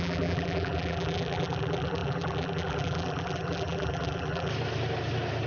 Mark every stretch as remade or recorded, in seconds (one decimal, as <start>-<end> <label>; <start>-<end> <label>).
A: 0.0-4.5 remade; 4.5-5.5 recorded